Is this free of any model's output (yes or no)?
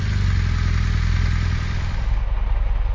yes